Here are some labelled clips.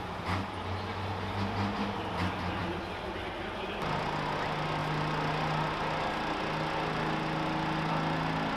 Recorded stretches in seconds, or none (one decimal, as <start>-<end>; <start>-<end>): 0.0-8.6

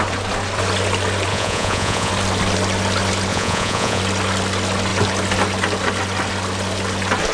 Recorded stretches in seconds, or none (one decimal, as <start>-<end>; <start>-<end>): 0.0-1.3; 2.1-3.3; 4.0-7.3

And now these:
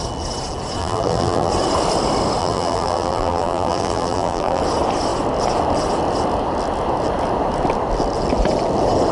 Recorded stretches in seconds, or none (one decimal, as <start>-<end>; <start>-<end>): 0.0-0.8; 1.5-2.4; 4.6-9.1

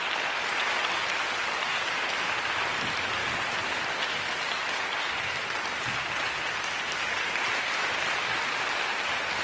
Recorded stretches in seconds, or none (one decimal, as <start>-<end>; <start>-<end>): 0.0-9.4

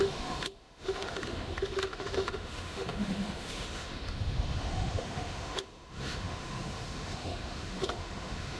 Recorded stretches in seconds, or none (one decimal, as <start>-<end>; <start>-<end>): none

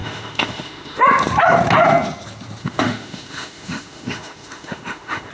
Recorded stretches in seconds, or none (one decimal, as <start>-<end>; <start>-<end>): 1.0-2.6

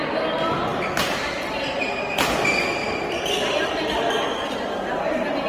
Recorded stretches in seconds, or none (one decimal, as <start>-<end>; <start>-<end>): 0.0-2.8; 4.5-5.5

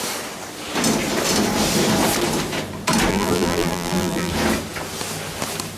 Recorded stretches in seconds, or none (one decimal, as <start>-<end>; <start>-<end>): 0.0-3.1; 4.3-5.8